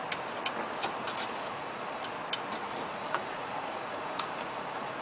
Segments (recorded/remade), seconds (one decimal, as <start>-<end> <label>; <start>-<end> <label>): 0.0-1.0 recorded; 1.0-2.0 remade; 2.0-2.6 recorded; 2.6-5.0 remade